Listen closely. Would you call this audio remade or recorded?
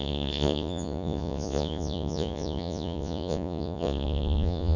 remade